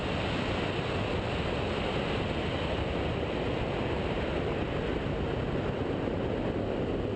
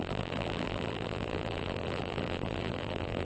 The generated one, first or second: second